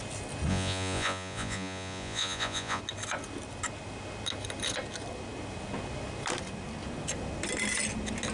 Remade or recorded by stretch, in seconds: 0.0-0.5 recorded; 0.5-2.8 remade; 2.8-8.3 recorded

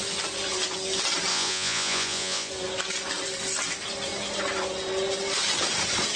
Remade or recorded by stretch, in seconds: 0.0-1.3 recorded; 1.3-2.5 remade; 2.5-6.2 recorded

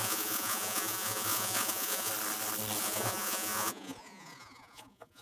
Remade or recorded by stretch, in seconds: 0.0-2.1 remade; 2.1-2.8 recorded; 2.8-5.2 remade